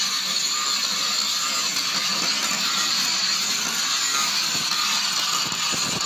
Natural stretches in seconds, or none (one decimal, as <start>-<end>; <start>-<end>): 0.0-0.8; 1.5-6.1